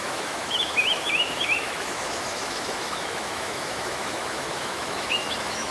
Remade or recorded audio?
remade